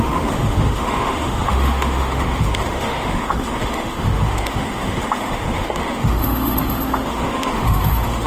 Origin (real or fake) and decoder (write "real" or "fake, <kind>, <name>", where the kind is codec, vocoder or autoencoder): fake, autoencoder, DAC-VAE